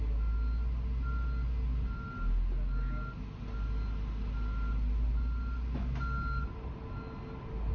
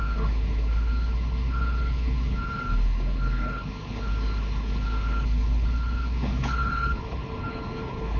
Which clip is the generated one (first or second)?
second